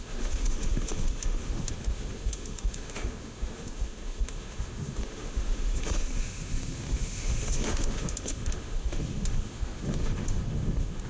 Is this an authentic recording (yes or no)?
no